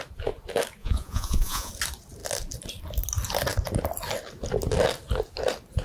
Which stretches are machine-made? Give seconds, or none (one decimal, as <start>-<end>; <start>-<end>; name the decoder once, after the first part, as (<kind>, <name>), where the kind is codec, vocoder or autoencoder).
0.8-1.7 (vocoder, Vocos)